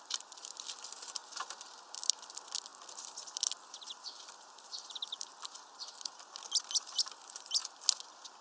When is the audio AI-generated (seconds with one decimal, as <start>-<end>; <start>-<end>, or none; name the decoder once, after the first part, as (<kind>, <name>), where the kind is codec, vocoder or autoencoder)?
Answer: 0.0-1.2 (vocoder, BigVGAN v2); 2.0-7.6